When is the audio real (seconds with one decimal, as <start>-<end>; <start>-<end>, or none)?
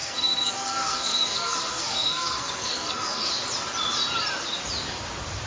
3.3-5.5